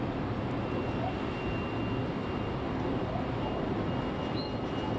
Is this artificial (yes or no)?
no